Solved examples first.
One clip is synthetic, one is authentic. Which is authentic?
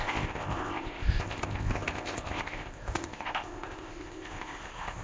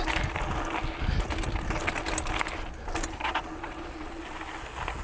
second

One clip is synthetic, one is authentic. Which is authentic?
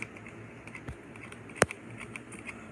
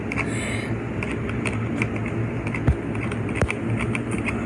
second